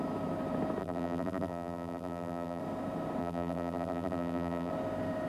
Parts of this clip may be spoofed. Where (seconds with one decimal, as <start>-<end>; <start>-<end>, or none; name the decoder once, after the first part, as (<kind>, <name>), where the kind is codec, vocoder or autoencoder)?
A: 0.8-2.6 (vocoder, BigVGAN v2); 3.2-4.7